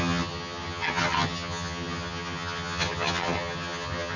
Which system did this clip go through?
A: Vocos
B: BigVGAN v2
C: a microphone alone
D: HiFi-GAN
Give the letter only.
D